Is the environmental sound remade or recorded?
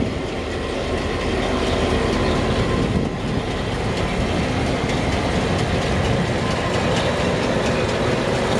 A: recorded